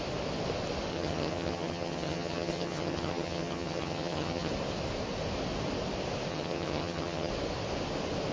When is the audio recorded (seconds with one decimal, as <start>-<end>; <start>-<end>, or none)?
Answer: 0.0-0.9; 4.5-6.3; 7.3-8.3